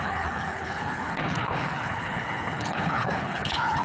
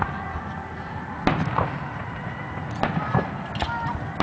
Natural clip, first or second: second